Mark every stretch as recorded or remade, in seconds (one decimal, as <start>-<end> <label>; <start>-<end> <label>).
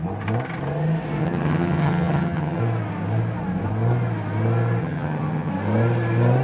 0.0-1.2 recorded; 1.2-2.6 remade; 2.6-4.8 recorded; 4.8-5.5 remade; 5.5-6.4 recorded